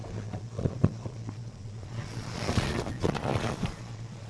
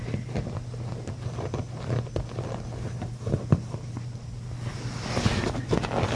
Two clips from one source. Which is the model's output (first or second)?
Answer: first